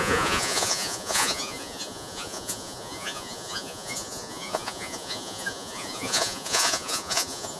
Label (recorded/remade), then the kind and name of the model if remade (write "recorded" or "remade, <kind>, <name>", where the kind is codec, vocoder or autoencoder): remade, vocoder, Vocos